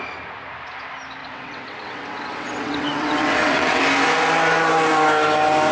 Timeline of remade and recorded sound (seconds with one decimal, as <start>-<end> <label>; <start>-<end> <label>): 0.0-1.2 recorded; 1.2-3.8 remade; 3.8-5.7 recorded